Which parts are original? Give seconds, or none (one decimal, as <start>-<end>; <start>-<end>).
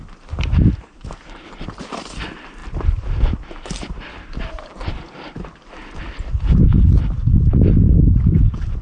none